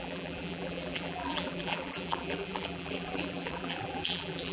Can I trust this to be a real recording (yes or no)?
no